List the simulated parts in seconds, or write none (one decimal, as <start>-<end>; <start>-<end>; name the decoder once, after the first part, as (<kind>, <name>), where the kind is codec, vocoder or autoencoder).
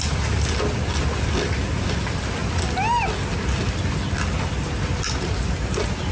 none